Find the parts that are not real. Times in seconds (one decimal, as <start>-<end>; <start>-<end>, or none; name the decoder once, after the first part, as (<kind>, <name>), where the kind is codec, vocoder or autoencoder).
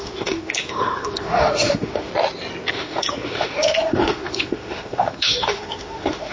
0.0-2.1 (autoencoder, DAC-VAE); 2.7-6.3